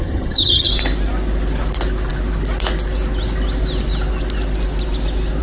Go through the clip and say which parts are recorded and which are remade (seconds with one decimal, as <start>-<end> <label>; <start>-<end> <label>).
0.0-0.7 remade; 0.7-5.4 recorded